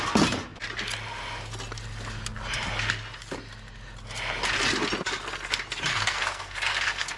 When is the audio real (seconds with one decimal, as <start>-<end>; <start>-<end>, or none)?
0.0-5.9